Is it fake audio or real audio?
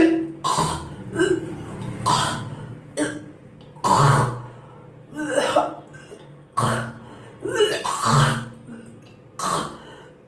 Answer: real